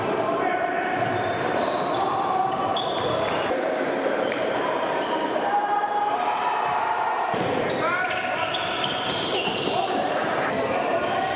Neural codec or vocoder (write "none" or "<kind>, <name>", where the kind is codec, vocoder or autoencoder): vocoder, BigVGAN v2